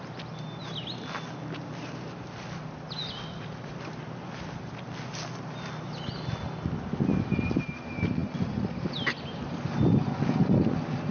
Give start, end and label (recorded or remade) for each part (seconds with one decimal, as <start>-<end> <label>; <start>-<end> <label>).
0.0-3.0 recorded; 3.0-4.2 remade; 4.2-8.2 recorded; 8.2-9.8 remade; 9.8-11.1 recorded